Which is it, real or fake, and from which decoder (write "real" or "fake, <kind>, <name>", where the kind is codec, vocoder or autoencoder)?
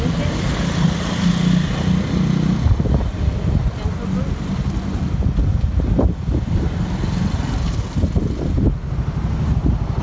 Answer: real